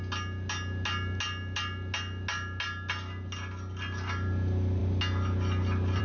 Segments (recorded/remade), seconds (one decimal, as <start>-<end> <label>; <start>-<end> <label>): 0.0-6.0 recorded